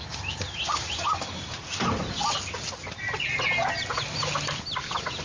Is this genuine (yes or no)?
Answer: yes